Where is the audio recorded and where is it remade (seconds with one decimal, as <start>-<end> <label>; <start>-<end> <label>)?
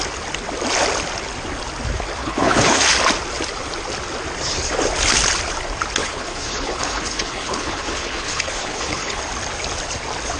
0.0-2.2 recorded; 2.2-2.8 remade; 2.8-6.0 recorded; 6.0-9.2 remade; 9.2-10.4 recorded